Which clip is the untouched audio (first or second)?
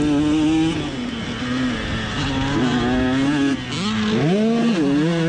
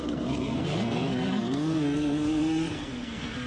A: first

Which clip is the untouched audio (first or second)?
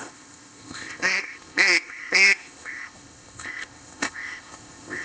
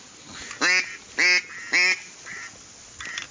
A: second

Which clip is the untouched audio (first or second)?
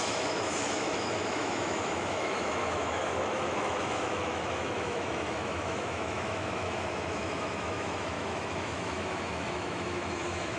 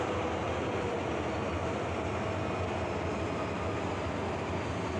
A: second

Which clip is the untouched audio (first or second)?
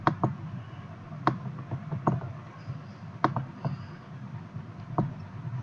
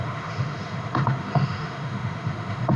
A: first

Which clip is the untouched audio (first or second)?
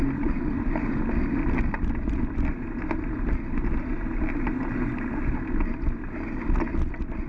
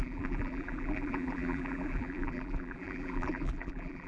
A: first